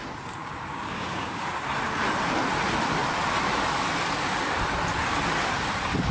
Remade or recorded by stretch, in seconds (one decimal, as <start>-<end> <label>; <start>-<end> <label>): 0.0-0.4 recorded; 0.4-1.4 remade; 1.4-6.1 recorded